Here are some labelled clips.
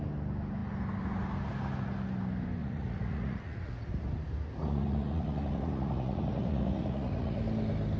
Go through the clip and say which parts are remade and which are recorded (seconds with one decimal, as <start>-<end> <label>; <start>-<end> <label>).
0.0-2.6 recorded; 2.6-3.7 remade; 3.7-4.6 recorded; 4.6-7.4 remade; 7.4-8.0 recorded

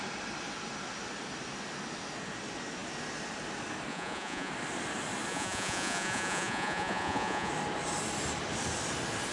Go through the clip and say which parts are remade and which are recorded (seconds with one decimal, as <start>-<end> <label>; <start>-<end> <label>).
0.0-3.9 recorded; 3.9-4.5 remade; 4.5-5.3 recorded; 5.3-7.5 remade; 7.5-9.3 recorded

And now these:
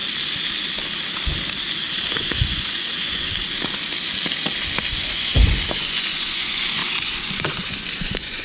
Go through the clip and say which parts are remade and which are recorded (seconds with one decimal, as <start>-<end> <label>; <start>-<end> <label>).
0.0-1.9 recorded; 1.9-3.3 remade; 3.3-4.9 recorded; 4.9-8.4 remade